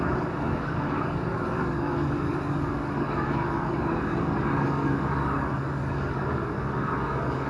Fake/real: fake